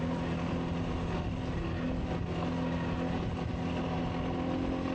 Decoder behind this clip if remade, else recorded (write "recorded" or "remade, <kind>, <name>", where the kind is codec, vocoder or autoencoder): recorded